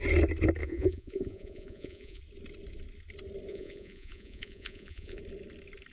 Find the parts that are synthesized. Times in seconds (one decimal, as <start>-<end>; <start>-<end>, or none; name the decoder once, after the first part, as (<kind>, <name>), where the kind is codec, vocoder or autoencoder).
0.6-2.2 (vocoder, Vocos); 3.5-5.2